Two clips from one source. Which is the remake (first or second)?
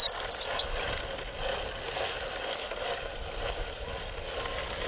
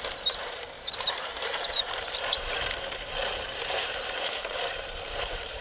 second